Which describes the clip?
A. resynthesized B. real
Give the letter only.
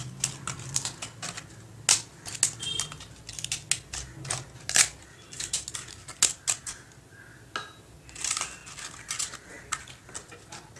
B